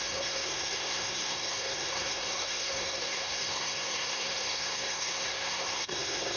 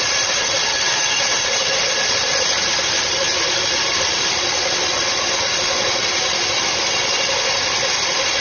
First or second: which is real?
second